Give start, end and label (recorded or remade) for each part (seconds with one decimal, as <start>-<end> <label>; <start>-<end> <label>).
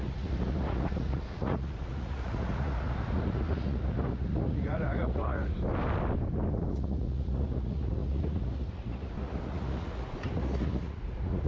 0.0-5.5 remade; 5.5-6.5 recorded; 6.5-11.5 remade